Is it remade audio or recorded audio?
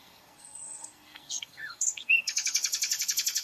remade